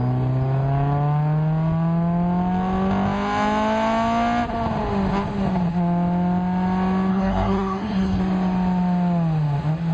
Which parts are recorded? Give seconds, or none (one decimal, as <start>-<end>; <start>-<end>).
0.0-7.1; 8.2-9.9